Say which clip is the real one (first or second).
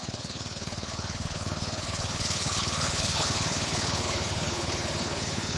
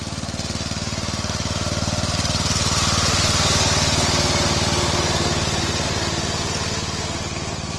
second